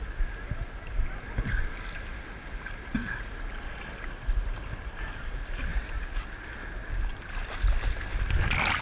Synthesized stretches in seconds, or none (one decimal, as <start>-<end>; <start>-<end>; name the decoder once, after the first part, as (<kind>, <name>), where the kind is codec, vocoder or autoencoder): none